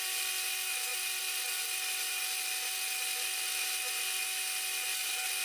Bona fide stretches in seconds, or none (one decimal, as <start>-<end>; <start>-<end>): 0.0-5.4